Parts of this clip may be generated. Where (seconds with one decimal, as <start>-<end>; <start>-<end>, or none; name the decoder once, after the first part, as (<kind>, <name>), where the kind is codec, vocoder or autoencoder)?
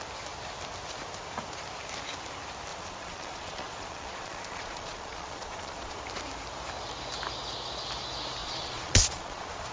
2.7-6.0 (vocoder, Vocos); 8.4-9.7